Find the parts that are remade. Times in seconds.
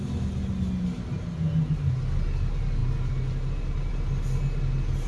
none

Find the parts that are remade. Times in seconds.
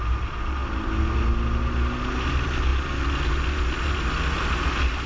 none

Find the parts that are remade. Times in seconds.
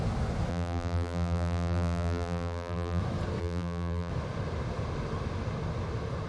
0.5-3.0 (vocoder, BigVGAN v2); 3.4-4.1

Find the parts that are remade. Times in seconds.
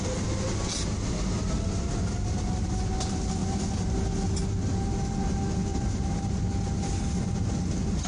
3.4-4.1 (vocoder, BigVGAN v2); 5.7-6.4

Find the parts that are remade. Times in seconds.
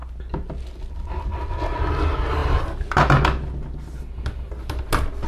none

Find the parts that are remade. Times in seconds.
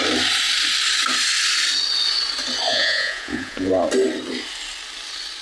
2.7-3.7 (vocoder, Vocos)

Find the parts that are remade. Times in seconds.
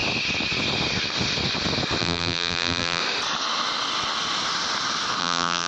2.0-3.0 (vocoder, BigVGAN v2); 5.2-5.7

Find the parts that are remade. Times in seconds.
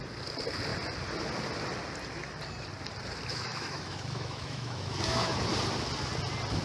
3.3-5.5 (autoencoder, DAC-VAE)